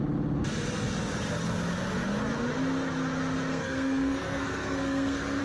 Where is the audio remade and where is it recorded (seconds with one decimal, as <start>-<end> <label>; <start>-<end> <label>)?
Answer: 0.0-3.5 recorded; 3.5-5.4 remade